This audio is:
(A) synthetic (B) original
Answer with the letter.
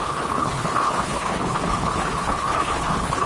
A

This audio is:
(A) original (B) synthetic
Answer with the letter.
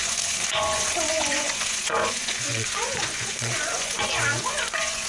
B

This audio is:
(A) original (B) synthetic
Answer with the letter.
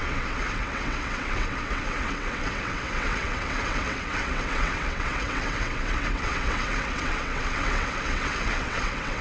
B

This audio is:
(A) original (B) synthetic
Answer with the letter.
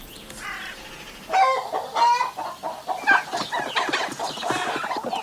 A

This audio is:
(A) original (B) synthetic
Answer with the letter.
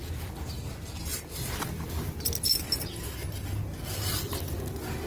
A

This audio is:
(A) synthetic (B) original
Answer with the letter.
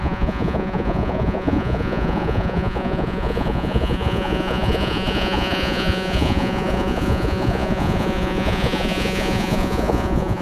A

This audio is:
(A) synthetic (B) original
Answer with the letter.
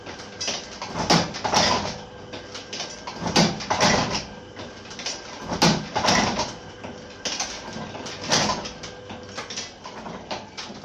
B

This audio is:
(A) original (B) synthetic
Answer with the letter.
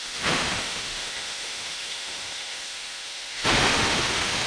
B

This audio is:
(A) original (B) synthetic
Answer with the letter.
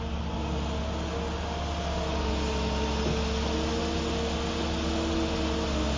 A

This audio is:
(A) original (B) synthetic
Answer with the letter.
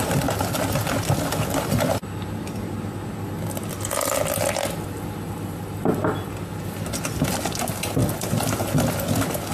A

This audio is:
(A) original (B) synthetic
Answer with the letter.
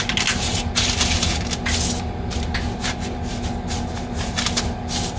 A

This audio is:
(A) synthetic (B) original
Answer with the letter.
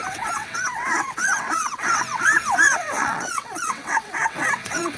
A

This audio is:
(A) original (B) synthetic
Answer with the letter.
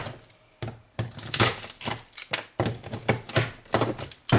A